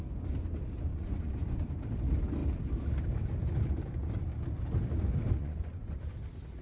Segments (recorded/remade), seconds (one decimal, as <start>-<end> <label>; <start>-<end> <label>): 0.0-0.9 recorded; 0.9-1.6 remade; 1.6-5.4 recorded; 5.4-6.0 remade; 6.0-6.6 recorded